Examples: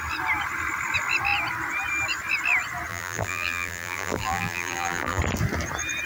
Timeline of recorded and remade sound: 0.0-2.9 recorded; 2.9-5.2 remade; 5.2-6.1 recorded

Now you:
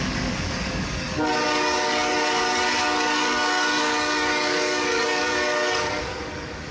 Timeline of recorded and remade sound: 0.0-6.7 remade